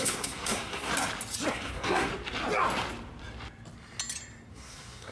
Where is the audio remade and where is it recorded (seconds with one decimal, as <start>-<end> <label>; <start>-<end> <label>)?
0.0-0.9 remade; 0.9-1.5 recorded; 1.5-2.1 remade; 2.1-4.5 recorded; 4.5-5.1 remade